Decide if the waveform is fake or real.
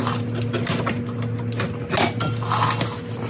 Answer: real